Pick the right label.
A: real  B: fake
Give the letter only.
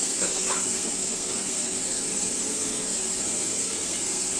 B